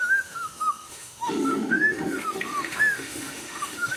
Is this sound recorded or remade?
remade